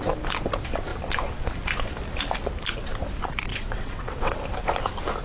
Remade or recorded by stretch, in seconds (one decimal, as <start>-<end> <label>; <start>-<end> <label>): 0.0-3.5 recorded; 3.5-4.4 remade; 4.4-5.2 recorded